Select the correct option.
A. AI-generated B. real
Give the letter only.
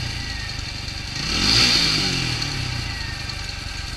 B